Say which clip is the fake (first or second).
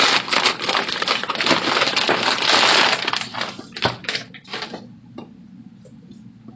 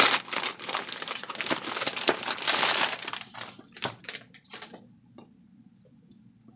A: second